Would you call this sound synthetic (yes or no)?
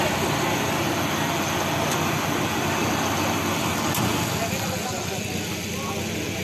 no